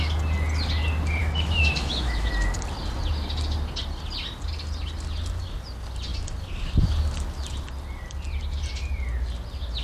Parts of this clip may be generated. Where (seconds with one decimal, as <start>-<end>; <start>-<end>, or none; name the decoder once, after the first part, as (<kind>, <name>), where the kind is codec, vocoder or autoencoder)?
1.2-2.3 (autoencoder, DAC-VAE)